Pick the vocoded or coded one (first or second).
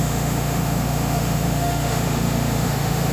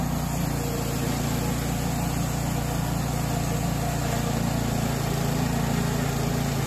first